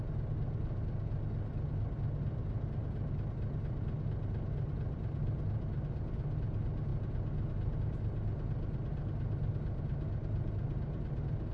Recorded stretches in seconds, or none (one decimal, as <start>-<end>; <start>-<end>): 0.0-11.5